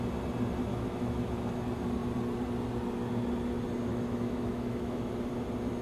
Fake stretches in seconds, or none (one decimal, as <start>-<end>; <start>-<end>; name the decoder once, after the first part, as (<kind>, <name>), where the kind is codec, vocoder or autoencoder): 0.7-1.6 (autoencoder, DAC-VAE); 3.9-5.1